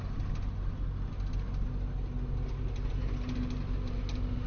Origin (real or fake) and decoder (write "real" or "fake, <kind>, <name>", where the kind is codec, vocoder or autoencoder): real